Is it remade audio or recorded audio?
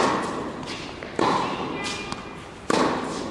recorded